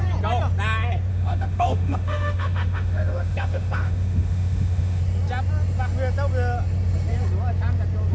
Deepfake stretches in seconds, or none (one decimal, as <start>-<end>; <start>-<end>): 1.1-5.0